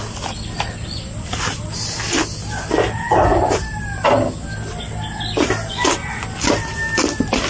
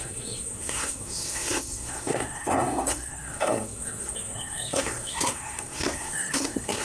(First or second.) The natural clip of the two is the first